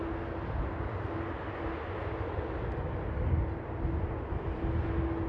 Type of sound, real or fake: real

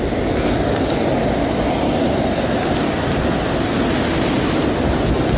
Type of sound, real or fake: real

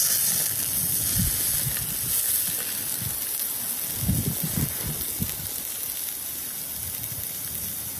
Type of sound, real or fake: real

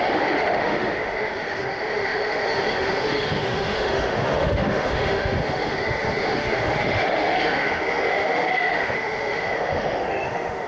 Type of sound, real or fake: fake